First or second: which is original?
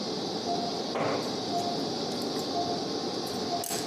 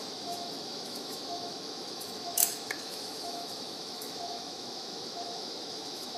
first